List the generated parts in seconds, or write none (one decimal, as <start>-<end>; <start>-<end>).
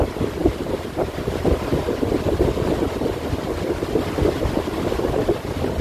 none